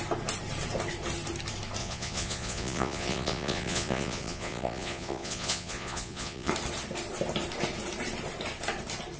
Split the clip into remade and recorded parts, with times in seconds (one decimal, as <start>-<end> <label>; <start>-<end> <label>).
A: 0.0-1.8 recorded; 1.8-6.5 remade; 6.5-9.2 recorded